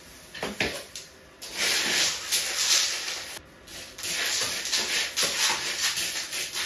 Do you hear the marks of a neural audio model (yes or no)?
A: no